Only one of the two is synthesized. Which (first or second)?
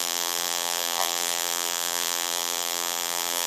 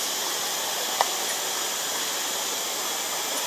first